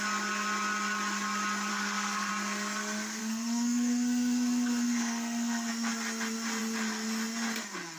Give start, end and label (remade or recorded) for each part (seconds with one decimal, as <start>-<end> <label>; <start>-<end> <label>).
0.0-1.7 recorded; 1.7-2.3 remade; 2.3-3.2 recorded; 3.2-5.7 remade; 5.7-8.0 recorded